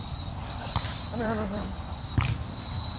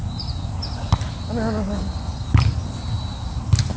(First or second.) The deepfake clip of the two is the first